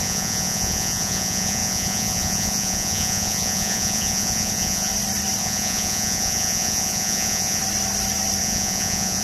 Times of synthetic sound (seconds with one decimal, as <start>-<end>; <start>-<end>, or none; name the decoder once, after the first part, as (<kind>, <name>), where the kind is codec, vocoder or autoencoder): 0.0-4.9 (vocoder, Vocos); 5.4-7.6; 8.4-9.2